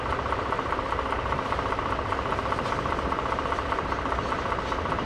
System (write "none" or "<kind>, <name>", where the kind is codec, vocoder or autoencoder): vocoder, BigVGAN v2